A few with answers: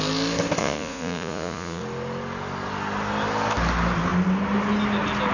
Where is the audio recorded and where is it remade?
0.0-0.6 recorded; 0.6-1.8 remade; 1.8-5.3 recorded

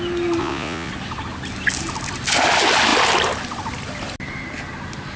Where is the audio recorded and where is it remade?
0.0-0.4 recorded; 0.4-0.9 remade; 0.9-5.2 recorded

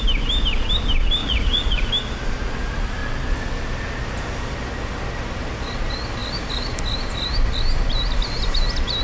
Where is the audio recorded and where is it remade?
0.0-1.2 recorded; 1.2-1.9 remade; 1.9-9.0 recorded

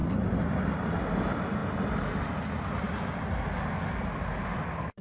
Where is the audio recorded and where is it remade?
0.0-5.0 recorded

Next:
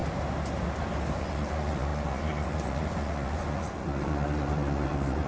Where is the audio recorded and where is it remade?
0.0-1.2 recorded; 1.2-5.3 remade